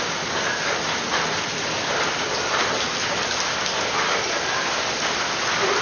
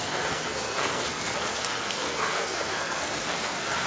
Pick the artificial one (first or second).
second